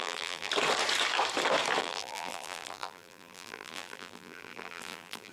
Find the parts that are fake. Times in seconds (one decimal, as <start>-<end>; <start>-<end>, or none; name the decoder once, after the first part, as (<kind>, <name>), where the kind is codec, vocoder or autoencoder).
0.0-0.5 (vocoder, BigVGAN v2); 1.8-5.3

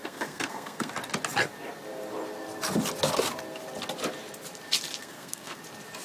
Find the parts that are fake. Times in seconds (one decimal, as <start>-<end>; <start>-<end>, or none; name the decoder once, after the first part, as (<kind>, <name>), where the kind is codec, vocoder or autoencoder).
0.0-0.9 (codec, SNAC); 5.0-5.6

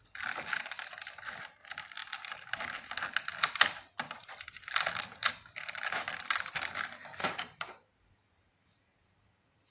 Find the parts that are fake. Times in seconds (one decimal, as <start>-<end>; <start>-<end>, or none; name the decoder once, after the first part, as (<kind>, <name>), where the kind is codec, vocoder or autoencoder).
7.2-9.7 (vocoder, BigVGAN v2)

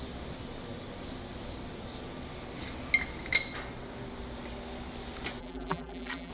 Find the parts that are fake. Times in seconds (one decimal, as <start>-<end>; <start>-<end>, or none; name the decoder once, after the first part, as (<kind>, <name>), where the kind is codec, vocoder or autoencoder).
5.4-6.3 (vocoder, BigVGAN v2)

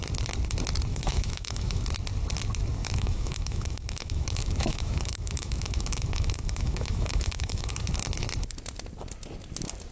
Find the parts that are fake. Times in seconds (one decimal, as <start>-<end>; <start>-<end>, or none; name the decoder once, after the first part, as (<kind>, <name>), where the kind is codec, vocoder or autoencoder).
0.9-1.8 (autoencoder, DAC-VAE); 2.8-7.9

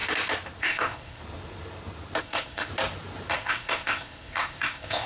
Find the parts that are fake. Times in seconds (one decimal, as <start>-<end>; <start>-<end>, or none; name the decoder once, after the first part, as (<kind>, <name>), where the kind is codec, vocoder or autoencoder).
0.6-1.2 (codec, ZipCodec); 2.2-2.7; 3.3-5.1